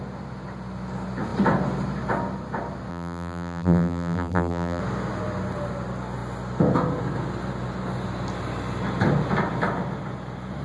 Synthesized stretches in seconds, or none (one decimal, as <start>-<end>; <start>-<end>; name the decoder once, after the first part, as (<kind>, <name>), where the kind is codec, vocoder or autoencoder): 2.9-4.8 (vocoder, BigVGAN v2)